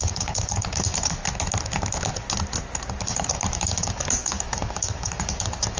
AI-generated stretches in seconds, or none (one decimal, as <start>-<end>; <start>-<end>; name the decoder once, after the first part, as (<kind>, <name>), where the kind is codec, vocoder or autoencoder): 0.0-1.2 (codec, DAC); 3.1-5.8